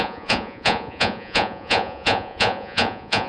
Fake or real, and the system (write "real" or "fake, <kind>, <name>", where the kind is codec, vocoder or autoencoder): fake, vocoder, Vocos